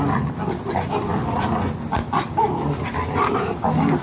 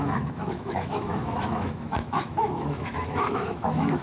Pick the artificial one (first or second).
second